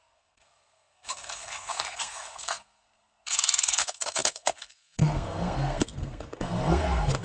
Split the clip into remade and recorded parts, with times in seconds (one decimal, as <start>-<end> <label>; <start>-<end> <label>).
0.0-7.2 remade